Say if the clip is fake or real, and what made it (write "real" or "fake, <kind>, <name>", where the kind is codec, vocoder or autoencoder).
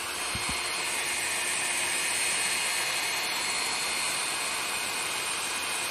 real